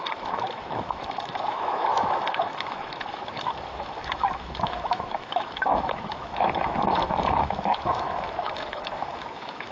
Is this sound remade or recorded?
remade